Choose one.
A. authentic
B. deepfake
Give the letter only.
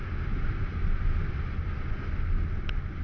A